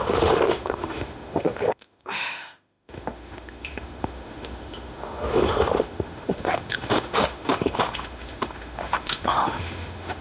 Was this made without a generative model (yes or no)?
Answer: no